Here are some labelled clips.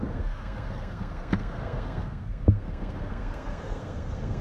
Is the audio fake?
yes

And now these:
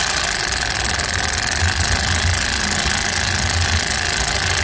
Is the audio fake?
no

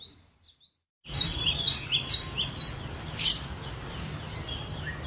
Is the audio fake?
no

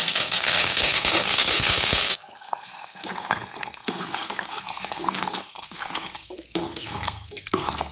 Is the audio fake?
yes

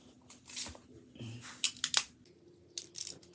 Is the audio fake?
no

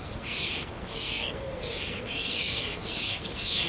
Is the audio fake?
yes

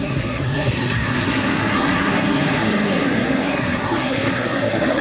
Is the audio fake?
yes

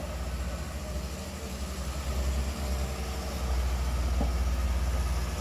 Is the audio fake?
no